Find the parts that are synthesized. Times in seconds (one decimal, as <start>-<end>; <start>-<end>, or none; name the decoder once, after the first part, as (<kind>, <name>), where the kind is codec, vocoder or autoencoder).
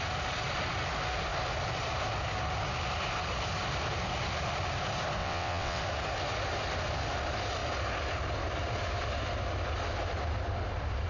5.2-5.8 (vocoder, WaveNeXt)